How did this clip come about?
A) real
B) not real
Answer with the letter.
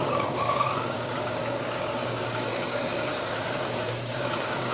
B